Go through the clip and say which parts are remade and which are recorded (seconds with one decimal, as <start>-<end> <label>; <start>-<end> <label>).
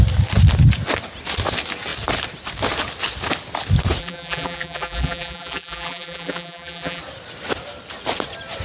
0.0-4.0 recorded; 4.0-7.0 remade; 7.0-8.6 recorded